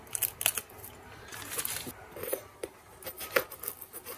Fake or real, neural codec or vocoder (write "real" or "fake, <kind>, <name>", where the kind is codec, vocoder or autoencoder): real